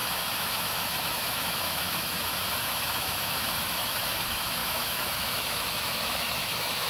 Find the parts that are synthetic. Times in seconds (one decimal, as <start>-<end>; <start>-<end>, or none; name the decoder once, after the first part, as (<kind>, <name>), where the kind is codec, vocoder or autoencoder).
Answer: 0.0-6.9 (autoencoder, DAC-VAE)

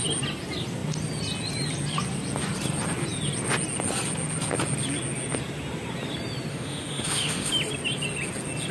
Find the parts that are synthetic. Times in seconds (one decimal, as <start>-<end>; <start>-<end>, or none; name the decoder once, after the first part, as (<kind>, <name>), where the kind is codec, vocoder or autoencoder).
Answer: 6.5-7.5 (autoencoder, DAC-VAE)

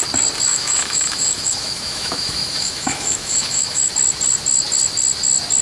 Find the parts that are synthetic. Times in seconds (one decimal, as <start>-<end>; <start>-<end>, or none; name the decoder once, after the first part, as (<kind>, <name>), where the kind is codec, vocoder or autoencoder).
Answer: 0.5-3.9 (autoencoder, DAC-VAE)